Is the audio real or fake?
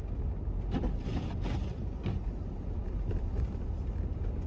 real